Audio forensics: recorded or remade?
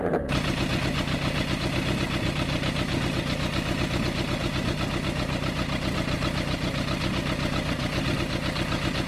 recorded